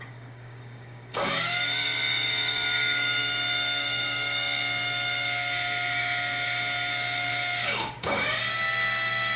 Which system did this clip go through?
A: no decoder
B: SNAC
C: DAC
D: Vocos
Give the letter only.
C